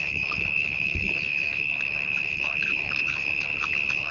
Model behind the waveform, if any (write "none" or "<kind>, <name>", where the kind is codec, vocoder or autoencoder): codec, HILCodec